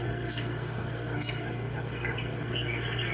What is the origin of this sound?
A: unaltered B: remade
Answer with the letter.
B